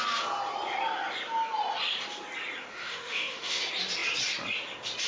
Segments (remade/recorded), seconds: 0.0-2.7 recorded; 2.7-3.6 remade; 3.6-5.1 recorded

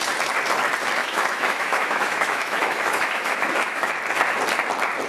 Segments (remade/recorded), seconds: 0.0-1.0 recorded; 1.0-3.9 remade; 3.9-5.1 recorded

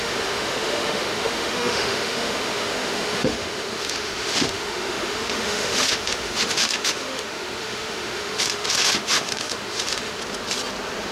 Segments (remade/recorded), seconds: 0.0-10.2 remade; 10.2-11.1 recorded

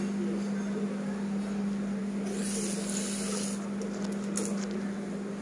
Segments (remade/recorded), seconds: 0.0-5.4 recorded

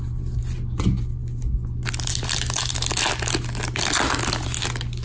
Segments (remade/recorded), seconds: 0.0-5.0 recorded

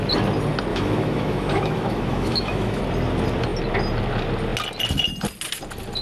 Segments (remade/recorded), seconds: 0.0-0.7 recorded; 0.7-2.8 remade; 2.8-6.0 recorded